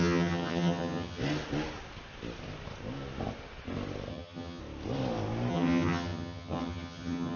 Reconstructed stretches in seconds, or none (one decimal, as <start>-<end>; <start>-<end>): 0.0-1.2; 4.1-4.6; 5.5-7.4